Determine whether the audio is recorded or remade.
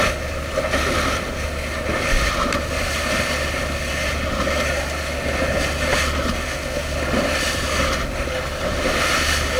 recorded